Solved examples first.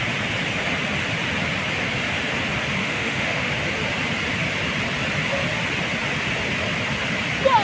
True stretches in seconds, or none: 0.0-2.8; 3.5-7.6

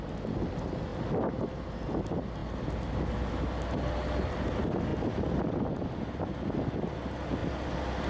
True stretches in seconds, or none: 0.0-8.1

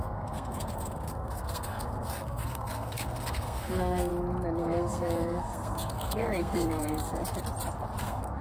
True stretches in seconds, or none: 4.1-4.6; 7.2-8.0

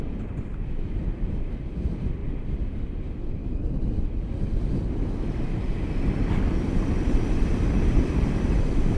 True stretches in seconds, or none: 0.0-9.0

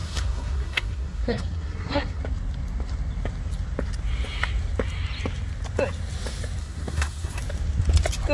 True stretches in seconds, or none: 2.2-6.6; 7.4-8.3

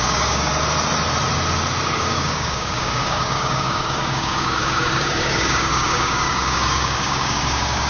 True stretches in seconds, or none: 0.5-2.0

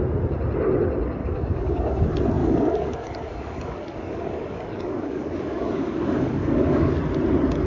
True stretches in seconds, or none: 0.0-1.2; 2.0-2.4; 7.0-7.7

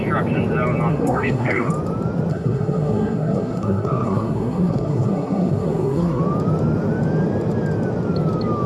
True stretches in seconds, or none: 0.0-0.9; 1.7-2.3; 6.2-8.7